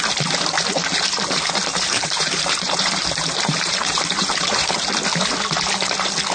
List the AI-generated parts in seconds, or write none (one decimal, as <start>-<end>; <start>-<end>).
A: 1.7-4.7